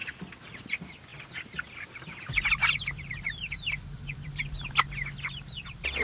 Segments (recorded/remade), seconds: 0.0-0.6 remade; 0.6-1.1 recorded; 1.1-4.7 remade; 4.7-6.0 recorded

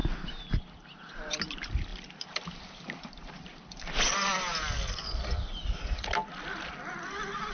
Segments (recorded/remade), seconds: 0.0-1.9 recorded; 1.9-4.6 remade; 4.6-7.5 recorded

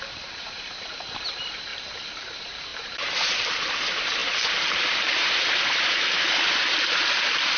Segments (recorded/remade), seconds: 0.0-7.6 remade